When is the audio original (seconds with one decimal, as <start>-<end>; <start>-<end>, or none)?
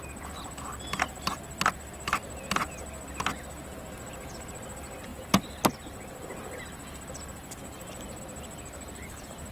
0.0-9.5